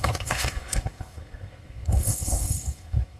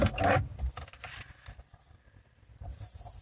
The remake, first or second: first